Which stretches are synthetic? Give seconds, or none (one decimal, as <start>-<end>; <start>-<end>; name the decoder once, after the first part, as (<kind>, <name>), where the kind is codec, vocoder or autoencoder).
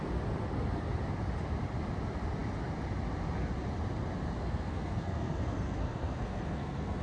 4.4-7.0 (codec, SNAC)